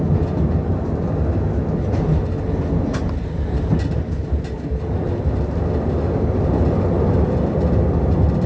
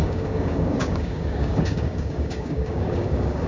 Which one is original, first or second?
first